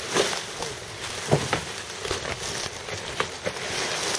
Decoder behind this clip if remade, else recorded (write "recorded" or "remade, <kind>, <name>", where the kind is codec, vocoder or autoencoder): recorded